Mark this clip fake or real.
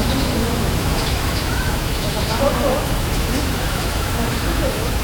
fake